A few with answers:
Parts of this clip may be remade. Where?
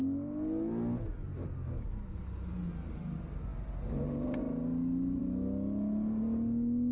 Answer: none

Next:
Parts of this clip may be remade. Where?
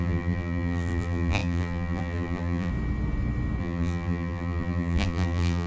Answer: 0.0-2.7; 3.6-5.7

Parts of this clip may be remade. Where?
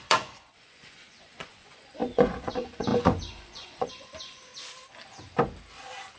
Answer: 0.0-4.5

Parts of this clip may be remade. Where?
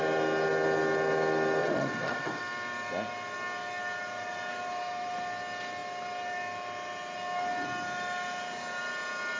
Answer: 1.6-2.4